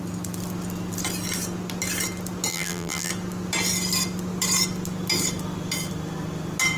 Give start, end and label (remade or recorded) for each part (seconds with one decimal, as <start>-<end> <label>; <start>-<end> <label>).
0.0-2.5 recorded; 2.5-3.1 remade; 3.1-6.8 recorded